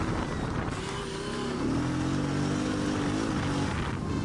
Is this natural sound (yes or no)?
yes